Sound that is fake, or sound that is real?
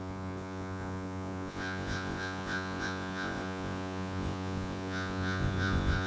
fake